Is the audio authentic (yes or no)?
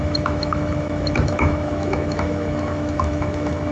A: no